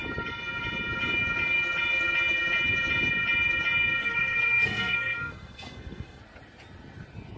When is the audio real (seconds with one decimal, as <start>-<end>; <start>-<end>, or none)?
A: 0.0-4.0; 6.2-7.4